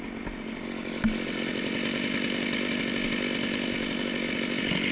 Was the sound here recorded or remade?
recorded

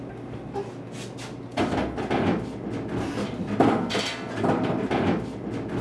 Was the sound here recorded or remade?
recorded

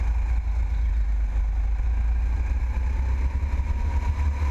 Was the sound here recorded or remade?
recorded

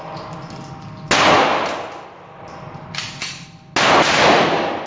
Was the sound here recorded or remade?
recorded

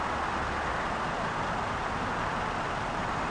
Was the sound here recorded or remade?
recorded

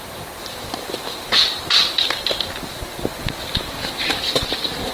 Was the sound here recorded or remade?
recorded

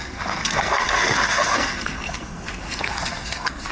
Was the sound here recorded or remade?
remade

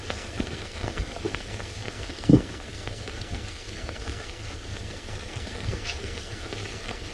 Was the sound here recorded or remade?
remade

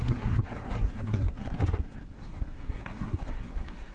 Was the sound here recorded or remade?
remade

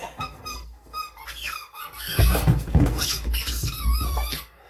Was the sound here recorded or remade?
remade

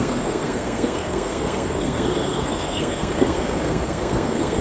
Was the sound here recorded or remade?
remade